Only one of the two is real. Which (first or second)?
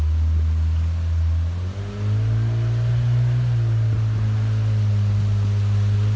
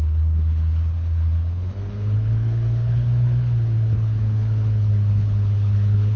first